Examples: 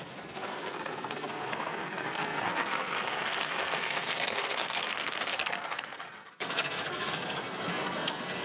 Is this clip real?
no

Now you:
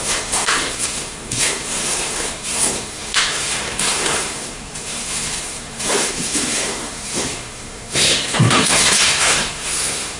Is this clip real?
no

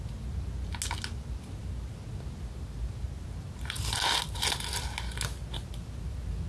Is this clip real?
yes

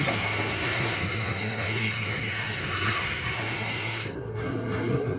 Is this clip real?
no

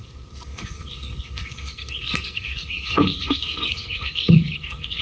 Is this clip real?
no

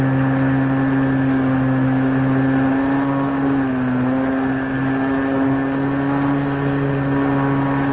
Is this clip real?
yes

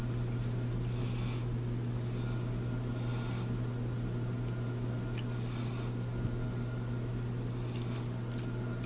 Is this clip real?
yes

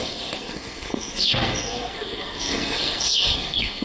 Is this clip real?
no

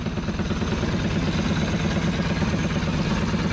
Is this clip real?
yes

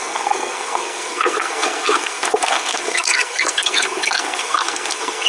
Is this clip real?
no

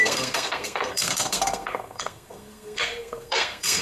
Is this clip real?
no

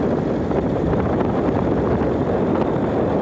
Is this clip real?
yes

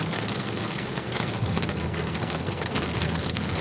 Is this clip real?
no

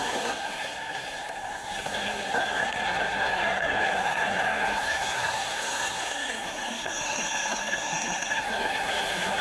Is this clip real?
no